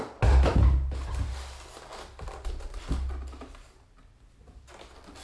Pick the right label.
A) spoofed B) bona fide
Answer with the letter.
B